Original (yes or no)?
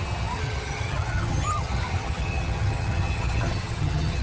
no